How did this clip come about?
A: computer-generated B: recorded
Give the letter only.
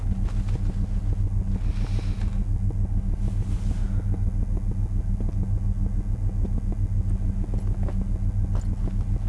B